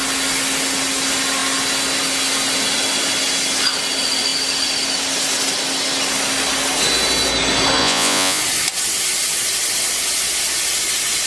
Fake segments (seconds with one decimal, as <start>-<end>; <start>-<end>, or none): 7.8-8.4

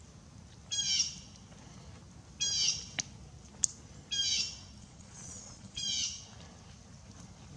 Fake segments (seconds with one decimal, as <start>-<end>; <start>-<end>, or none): 4.8-5.8